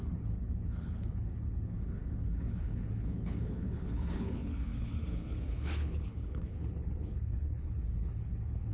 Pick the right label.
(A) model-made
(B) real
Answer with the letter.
A